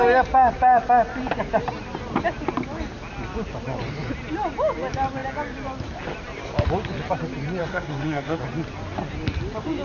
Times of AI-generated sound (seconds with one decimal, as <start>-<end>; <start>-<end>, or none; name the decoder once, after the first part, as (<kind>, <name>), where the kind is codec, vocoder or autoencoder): 7.6-8.4 (codec, SNAC)